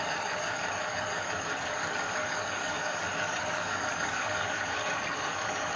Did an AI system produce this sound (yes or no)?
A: yes